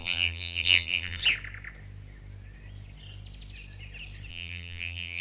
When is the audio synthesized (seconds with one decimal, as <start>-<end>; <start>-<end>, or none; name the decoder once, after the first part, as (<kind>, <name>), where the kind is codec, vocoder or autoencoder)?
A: 0.0-1.2 (vocoder, BigVGAN v2); 4.3-5.2